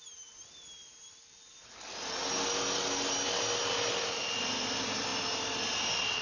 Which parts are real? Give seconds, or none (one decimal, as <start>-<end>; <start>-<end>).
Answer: 0.0-6.2